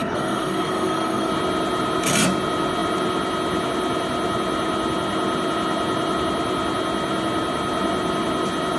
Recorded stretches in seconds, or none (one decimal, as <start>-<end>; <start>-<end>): 1.3-8.8